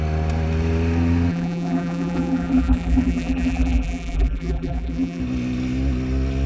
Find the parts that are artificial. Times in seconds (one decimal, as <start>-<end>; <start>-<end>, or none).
1.3-5.2